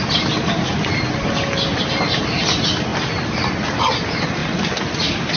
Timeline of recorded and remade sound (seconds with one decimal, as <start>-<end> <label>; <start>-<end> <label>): 0.0-5.4 recorded